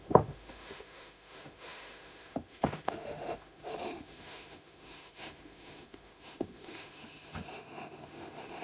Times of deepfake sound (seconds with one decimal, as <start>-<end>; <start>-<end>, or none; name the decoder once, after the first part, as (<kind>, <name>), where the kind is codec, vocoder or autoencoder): 0.0-8.6 (autoencoder, DAC-VAE)